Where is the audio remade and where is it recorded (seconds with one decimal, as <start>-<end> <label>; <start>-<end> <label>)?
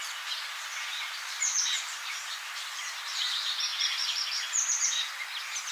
0.0-0.9 recorded; 0.9-3.3 remade; 3.3-3.7 recorded; 3.7-4.3 remade; 4.3-5.7 recorded